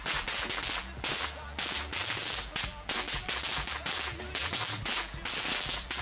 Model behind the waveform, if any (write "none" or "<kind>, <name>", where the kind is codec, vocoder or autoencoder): vocoder, BigVGAN v2